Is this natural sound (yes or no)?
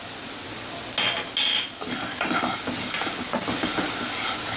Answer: yes